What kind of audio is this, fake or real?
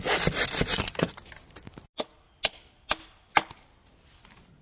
real